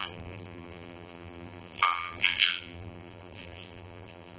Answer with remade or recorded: remade